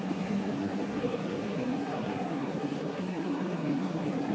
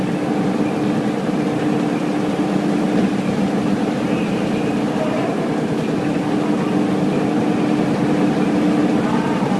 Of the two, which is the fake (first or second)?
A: first